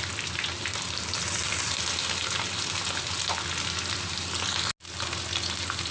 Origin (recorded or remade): recorded